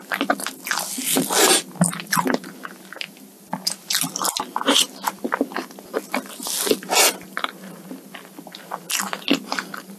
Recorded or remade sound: recorded